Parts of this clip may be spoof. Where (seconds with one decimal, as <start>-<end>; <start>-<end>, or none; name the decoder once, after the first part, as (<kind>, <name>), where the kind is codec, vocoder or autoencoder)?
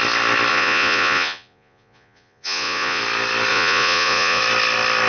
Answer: 0.5-3.0 (vocoder, Vocos); 3.5-4.4